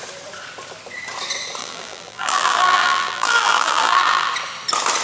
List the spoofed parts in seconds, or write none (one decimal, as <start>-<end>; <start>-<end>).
1.6-4.3

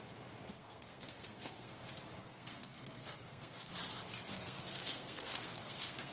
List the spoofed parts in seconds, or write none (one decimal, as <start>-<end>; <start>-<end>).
0.5-1.8; 2.2-3.7; 4.3-6.1

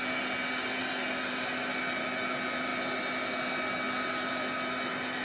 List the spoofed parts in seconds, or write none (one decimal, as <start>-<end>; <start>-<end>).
none

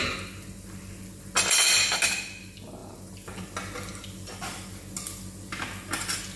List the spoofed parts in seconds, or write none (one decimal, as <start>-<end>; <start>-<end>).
none

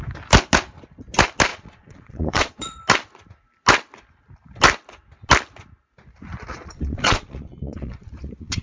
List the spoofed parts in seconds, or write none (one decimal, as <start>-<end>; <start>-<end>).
1.5-2.8; 6.5-8.6